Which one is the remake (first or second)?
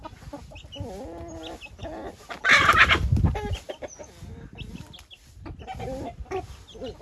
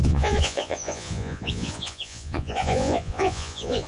second